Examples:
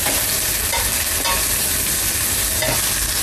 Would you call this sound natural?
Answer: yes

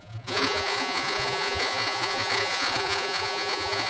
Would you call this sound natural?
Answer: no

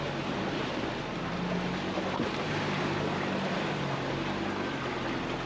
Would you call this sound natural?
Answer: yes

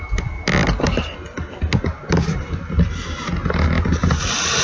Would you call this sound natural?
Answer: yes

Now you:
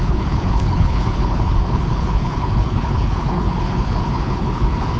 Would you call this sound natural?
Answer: no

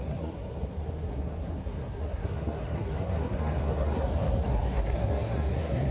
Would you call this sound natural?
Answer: no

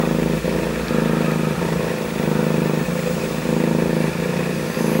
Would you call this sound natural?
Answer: yes